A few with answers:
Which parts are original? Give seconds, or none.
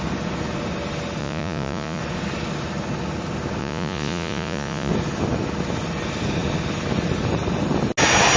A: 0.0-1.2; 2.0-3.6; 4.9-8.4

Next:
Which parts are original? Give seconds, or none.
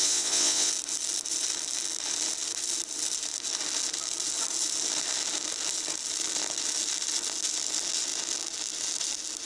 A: 0.7-9.5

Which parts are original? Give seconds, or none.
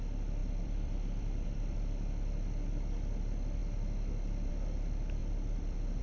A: 0.0-0.4; 1.8-5.2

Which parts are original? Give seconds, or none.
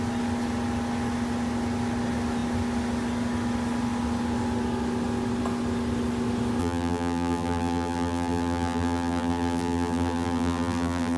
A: 0.0-6.6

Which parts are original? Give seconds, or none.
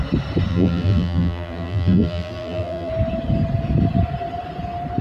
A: 0.0-0.5; 2.9-5.0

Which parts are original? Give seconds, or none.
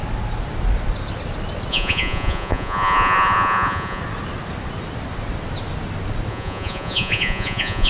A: 0.0-1.7; 4.0-6.3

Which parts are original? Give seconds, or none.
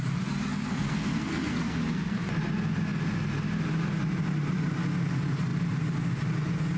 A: 0.0-0.5; 2.2-6.8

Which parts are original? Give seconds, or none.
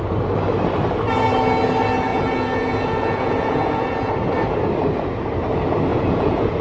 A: 0.0-2.1; 4.1-5.9